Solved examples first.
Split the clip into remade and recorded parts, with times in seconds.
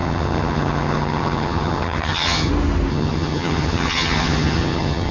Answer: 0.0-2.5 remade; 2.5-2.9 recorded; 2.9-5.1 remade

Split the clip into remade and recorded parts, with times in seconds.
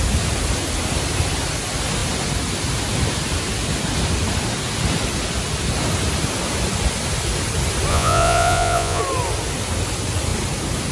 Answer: 0.0-7.9 recorded; 7.9-9.0 remade; 9.0-10.9 recorded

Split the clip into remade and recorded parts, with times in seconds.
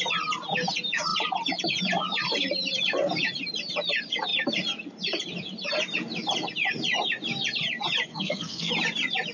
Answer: 0.0-8.1 recorded; 8.1-8.7 remade; 8.7-9.3 recorded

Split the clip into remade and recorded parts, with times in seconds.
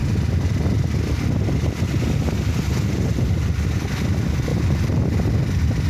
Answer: 0.0-4.5 recorded; 4.5-5.0 remade; 5.0-5.9 recorded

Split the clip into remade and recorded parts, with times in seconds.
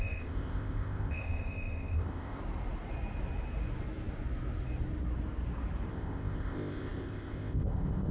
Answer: 0.0-2.4 remade; 2.4-5.9 recorded; 5.9-8.1 remade